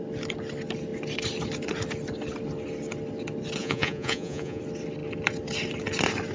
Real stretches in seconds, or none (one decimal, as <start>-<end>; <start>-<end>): 0.0-3.6; 4.6-6.3